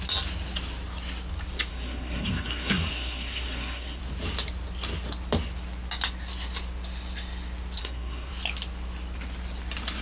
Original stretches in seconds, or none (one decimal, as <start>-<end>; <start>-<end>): 0.0-1.7; 4.0-7.8; 8.3-10.0